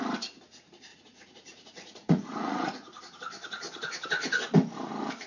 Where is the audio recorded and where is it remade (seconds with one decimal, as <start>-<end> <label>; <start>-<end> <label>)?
0.0-0.9 recorded; 0.9-3.0 remade; 3.0-5.3 recorded